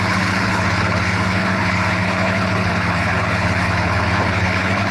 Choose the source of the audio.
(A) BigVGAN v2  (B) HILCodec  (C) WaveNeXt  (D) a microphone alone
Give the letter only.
B